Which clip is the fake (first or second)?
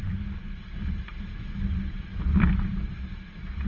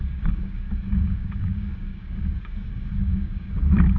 second